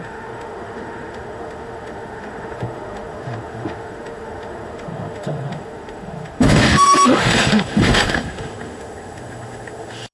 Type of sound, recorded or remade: remade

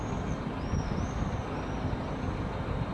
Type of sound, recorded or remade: recorded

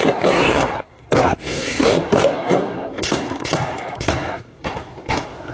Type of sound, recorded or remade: remade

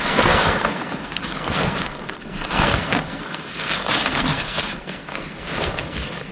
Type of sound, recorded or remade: remade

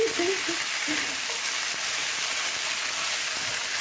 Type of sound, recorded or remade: recorded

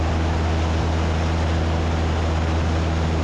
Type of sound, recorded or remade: recorded